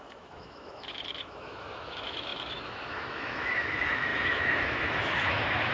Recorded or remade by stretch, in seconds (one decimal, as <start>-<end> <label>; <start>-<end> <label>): 0.0-5.7 remade